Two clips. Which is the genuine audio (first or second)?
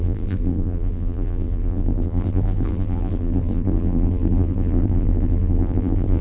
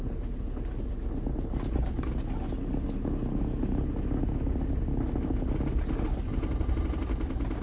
second